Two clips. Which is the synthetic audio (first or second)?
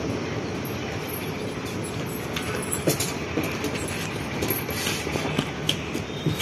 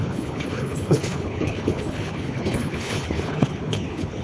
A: second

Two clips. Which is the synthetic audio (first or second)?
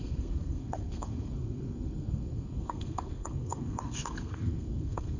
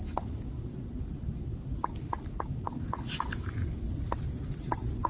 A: first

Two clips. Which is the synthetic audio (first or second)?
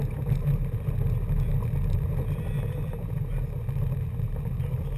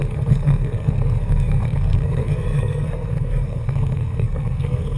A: second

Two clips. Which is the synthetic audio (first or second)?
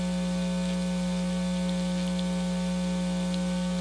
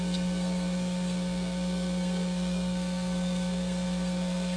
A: second